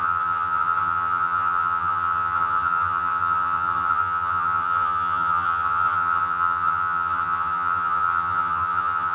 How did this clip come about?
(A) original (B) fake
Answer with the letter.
B